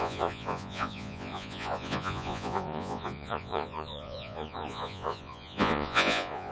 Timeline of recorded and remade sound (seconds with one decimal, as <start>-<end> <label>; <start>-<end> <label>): 0.0-6.5 remade